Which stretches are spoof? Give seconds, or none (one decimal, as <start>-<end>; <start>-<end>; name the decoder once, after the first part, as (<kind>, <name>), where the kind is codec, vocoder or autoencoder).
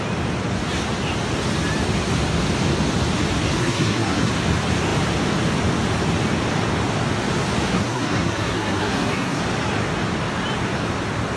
3.6-4.3 (codec, SNAC); 7.7-9.4